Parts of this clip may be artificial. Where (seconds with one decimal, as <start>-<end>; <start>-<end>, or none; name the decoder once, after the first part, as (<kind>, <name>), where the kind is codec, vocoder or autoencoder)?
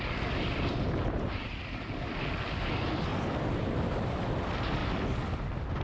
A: none